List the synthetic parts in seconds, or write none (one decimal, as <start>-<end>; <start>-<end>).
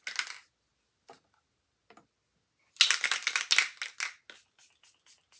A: none